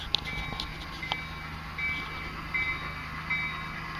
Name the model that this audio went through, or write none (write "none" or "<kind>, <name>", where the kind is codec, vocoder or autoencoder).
none